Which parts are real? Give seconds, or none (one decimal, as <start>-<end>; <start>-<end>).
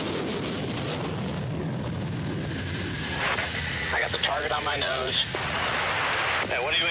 0.0-3.1; 5.8-6.9